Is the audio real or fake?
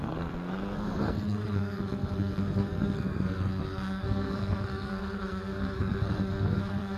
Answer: fake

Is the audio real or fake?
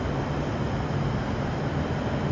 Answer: real